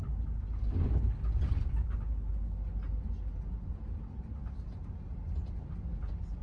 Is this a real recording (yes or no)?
yes